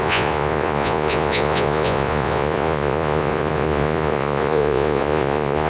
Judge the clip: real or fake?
fake